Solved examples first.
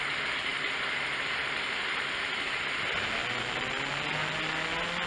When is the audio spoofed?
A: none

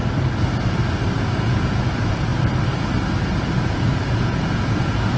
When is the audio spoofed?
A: 1.2-2.3 (vocoder, Vocos); 3.6-5.2